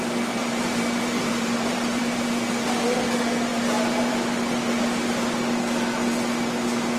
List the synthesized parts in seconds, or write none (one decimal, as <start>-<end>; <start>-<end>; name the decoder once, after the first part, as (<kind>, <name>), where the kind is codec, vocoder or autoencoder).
0.4-2.3 (vocoder, BigVGAN v2); 3.5-4.1